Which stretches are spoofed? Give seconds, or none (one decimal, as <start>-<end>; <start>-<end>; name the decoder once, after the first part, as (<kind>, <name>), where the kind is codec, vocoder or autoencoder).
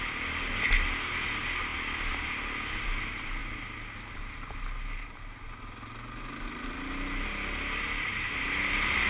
none